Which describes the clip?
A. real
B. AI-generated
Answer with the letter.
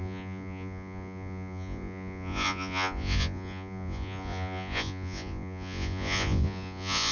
B